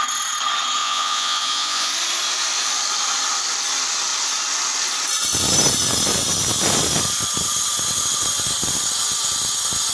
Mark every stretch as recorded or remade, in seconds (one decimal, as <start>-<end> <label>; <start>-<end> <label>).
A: 0.0-0.8 recorded; 0.8-1.9 remade; 1.9-9.9 recorded